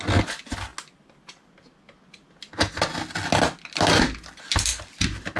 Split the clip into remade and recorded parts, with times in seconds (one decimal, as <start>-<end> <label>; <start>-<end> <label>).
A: 0.0-5.4 recorded